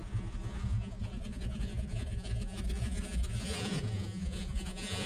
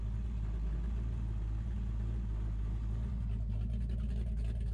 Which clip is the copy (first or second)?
first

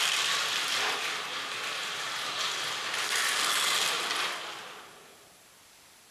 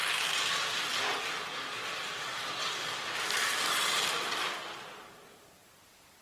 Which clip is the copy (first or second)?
first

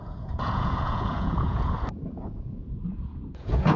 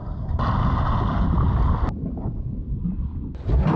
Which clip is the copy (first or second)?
first